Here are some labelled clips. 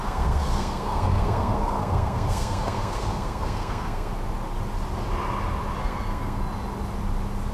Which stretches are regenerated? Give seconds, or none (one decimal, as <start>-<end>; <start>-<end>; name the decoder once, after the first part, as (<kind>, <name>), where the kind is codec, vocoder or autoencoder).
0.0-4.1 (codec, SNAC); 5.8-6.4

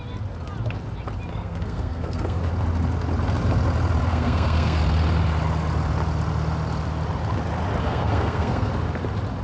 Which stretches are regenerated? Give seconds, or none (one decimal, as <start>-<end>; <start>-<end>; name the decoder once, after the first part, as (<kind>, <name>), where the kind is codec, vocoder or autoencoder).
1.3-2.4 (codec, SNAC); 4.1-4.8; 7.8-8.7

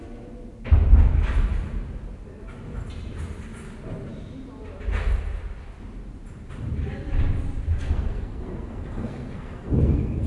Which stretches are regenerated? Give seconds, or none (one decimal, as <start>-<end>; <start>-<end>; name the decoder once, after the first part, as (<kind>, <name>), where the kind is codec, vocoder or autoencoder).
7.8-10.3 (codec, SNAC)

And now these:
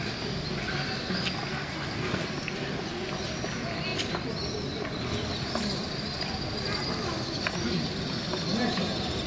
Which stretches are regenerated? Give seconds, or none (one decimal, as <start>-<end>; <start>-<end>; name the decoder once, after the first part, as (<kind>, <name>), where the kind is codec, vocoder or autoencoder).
1.5-2.3 (codec, SNAC)

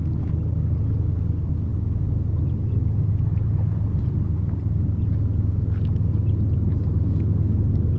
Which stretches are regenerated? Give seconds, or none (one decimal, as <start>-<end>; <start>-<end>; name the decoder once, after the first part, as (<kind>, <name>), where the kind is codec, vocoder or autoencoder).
none

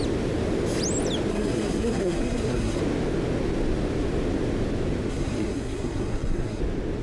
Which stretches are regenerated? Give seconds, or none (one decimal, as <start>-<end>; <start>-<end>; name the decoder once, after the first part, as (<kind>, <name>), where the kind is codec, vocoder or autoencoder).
1.3-2.8 (codec, SNAC); 5.1-6.6

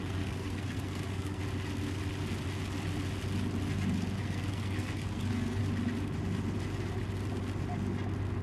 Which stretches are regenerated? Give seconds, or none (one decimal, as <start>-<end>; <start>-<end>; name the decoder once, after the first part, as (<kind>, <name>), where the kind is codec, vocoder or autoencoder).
0.0-1.4 (codec, SNAC); 4.2-5.6

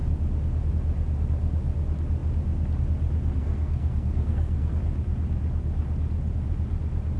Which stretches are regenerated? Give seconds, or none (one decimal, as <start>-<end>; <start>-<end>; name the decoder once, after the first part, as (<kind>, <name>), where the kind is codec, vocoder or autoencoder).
3.4-4.8 (codec, SNAC)